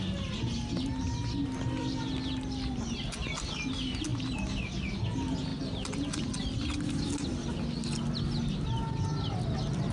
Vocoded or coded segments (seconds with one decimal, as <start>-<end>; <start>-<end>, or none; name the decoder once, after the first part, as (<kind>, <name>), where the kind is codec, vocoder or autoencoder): 5.5-6.4 (vocoder, BigVGAN v2)